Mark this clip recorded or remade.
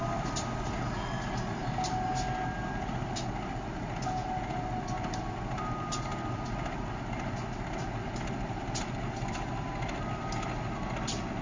recorded